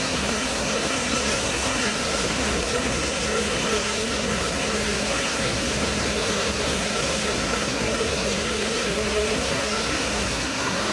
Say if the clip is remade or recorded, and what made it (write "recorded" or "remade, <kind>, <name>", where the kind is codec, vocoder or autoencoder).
remade, codec, SNAC